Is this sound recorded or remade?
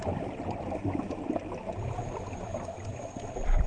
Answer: recorded